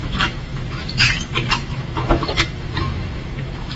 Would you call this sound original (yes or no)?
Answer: no